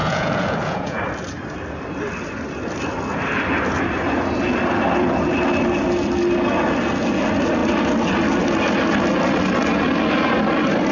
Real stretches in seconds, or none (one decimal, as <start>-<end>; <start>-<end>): 1.0-10.9